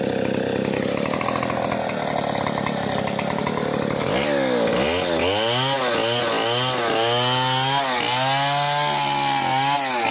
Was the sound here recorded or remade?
recorded